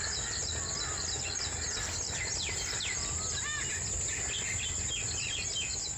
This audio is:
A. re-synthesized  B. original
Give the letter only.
A